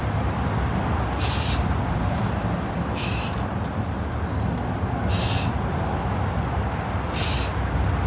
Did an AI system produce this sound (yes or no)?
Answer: no